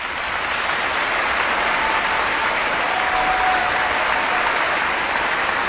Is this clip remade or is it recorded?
recorded